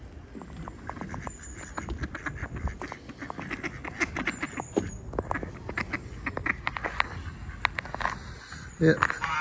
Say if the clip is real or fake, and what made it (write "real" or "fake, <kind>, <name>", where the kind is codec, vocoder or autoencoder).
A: real